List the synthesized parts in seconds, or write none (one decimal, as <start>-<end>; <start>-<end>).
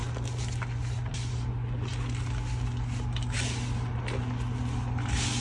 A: none